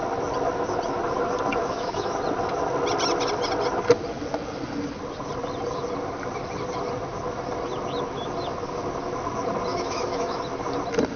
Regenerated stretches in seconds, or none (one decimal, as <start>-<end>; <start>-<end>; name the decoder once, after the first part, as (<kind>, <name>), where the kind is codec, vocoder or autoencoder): 1.6-2.2 (autoencoder, DAC-VAE); 9.7-10.4